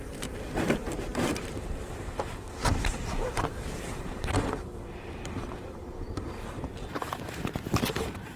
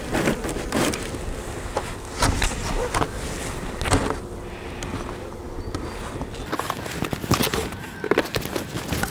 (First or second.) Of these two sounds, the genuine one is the second